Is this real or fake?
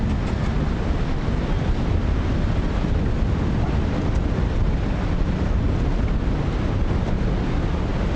real